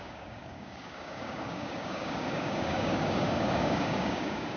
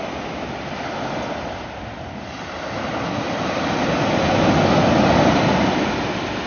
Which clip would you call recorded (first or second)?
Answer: second